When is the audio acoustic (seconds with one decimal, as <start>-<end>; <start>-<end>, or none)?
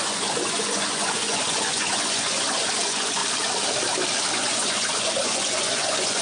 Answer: 3.2-4.3